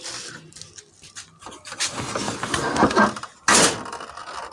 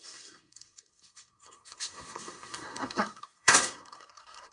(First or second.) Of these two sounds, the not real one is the second